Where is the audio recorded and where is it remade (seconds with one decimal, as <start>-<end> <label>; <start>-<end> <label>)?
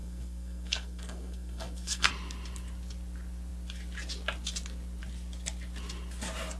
0.0-2.1 remade; 2.1-6.6 recorded